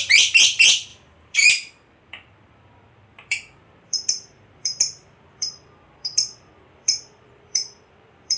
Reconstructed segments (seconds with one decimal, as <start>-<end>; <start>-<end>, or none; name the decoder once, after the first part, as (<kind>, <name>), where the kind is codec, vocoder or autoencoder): 0.0-8.4 (vocoder, BigVGAN v2)